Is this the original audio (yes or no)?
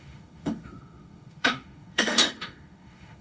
no